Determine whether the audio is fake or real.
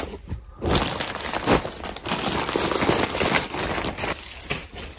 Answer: real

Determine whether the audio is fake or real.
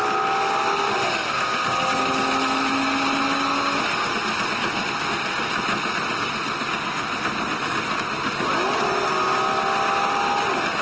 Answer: real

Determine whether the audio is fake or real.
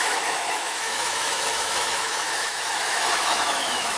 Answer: fake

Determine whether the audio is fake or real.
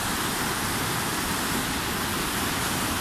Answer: real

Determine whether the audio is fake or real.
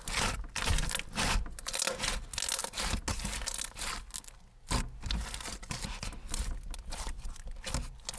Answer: real